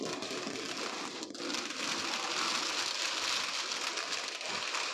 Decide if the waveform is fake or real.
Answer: real